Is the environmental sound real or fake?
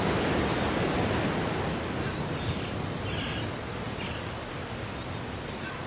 real